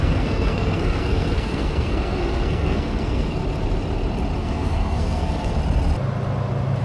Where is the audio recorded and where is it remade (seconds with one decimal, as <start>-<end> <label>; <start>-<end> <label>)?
0.0-3.4 remade; 3.4-4.4 recorded; 4.4-5.6 remade; 5.6-6.8 recorded